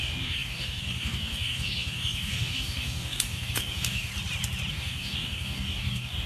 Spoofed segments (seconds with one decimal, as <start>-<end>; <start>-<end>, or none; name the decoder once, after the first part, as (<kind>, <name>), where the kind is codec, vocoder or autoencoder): 0.0-4.1 (codec, DAC); 4.7-6.3